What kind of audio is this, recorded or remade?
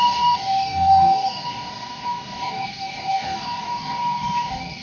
remade